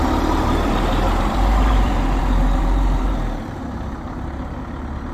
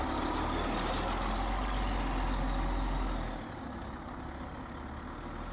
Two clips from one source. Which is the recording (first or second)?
second